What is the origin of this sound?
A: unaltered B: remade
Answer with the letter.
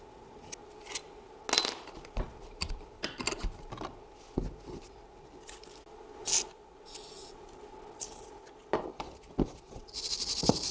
A